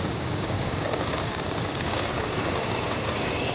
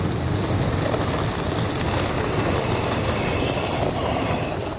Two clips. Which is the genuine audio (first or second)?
second